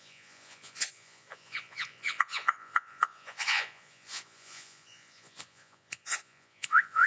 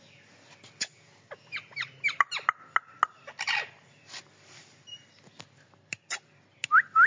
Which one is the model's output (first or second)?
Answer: first